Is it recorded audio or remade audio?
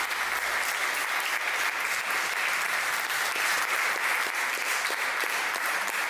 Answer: recorded